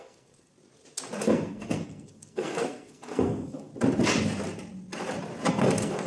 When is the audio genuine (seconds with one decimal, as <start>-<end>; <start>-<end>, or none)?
0.5-1.2; 3.7-5.5